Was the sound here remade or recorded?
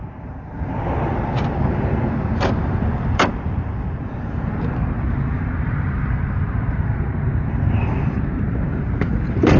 remade